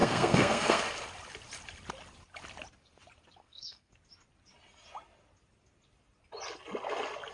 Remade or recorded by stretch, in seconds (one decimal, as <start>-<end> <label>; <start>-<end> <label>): 0.0-0.8 remade; 0.8-3.4 recorded; 3.4-3.9 remade; 3.9-7.3 recorded